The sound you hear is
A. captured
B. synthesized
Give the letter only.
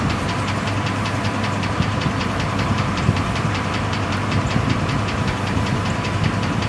B